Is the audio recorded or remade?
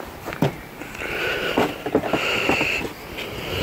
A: recorded